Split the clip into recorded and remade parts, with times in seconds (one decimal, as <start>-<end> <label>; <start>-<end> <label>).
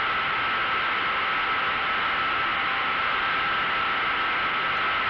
0.0-2.5 recorded; 2.5-3.5 remade; 3.5-5.1 recorded